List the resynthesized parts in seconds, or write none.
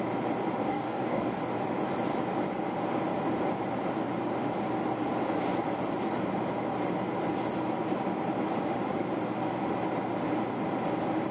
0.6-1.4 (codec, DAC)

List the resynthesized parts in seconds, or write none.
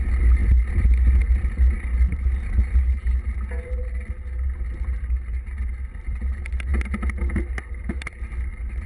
none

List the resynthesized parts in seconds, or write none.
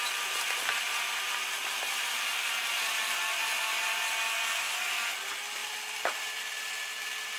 none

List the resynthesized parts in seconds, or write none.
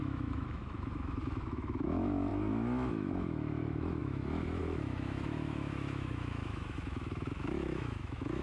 0.0-8.4 (autoencoder, DAC-VAE)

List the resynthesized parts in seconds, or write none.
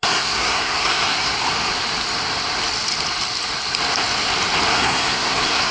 0.0-1.3 (codec, SNAC); 4.7-5.7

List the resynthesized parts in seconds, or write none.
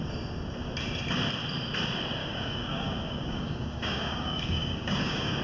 2.2-5.4 (codec, DAC)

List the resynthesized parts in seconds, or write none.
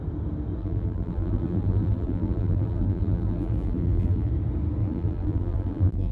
0.6-4.3 (vocoder, BigVGAN v2); 4.8-6.1